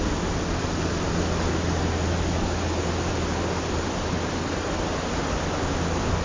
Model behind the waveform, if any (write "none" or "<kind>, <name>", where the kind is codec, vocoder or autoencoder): none